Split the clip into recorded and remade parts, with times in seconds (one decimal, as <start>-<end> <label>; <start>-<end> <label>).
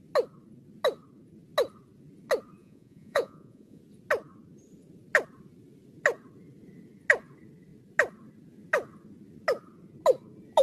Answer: 0.0-2.6 recorded; 2.6-3.8 remade; 3.8-10.6 recorded